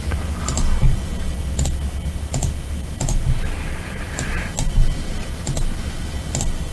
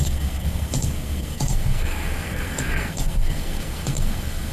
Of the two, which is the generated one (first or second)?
second